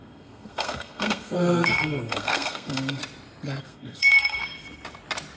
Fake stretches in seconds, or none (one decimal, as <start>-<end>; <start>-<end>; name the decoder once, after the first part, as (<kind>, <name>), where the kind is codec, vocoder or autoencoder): 0.0-3.0 (codec, SNAC); 3.6-4.4